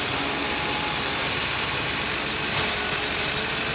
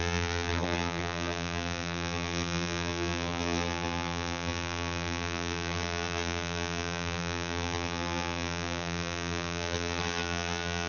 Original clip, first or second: first